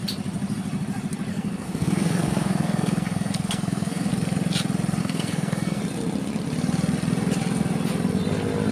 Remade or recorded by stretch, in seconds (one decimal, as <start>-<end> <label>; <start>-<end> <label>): 0.0-1.3 recorded; 1.3-4.1 remade; 4.1-5.0 recorded; 5.0-5.8 remade; 5.8-8.7 recorded